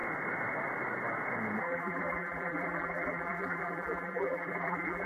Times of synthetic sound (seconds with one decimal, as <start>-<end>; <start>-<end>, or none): 1.6-5.1